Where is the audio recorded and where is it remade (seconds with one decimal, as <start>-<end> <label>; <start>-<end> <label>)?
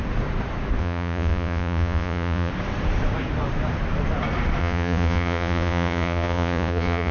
0.0-0.8 recorded; 0.8-2.5 remade; 2.5-4.6 recorded; 4.6-7.1 remade